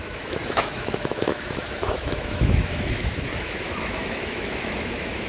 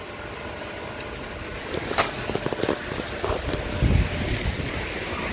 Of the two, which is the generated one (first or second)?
first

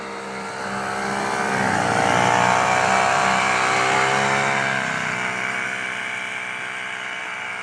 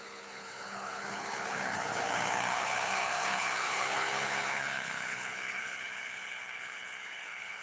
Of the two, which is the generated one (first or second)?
second